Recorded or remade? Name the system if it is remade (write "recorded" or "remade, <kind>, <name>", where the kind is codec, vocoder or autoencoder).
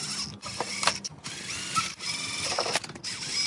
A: recorded